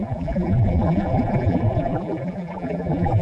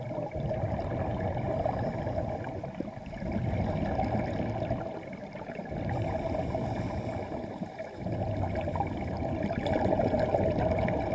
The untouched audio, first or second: second